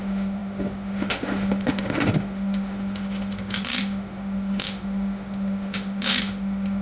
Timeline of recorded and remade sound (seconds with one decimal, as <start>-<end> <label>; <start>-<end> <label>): 0.0-6.8 remade